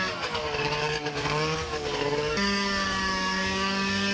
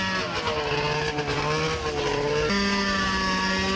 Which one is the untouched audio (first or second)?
second